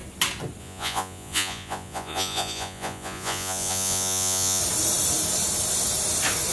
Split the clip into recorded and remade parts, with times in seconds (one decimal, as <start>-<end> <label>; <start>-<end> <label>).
0.0-0.6 recorded; 0.6-4.6 remade; 4.6-6.5 recorded